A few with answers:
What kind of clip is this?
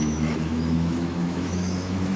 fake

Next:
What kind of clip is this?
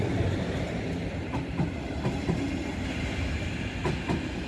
real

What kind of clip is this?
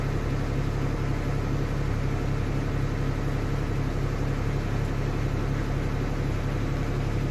real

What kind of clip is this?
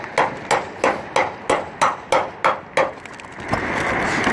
real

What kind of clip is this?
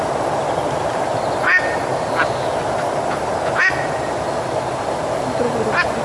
real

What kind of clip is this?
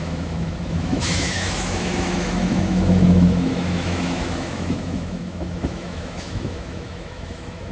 fake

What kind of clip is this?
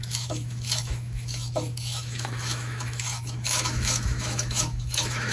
fake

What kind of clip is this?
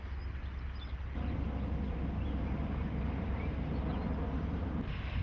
real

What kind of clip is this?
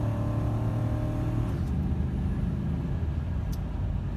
real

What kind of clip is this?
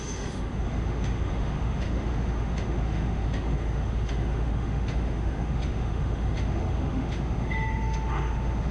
fake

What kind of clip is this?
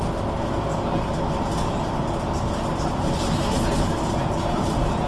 real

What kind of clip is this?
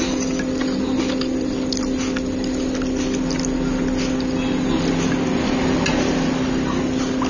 real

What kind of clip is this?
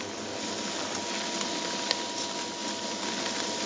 real